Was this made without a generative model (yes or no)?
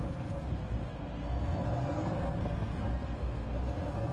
no